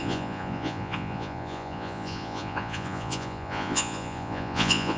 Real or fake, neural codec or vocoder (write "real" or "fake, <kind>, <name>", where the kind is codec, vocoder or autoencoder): fake, vocoder, Vocos